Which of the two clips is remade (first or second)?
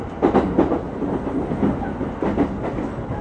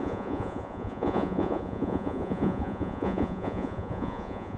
second